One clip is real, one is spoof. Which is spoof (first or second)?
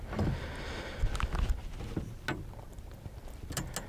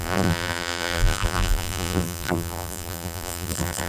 second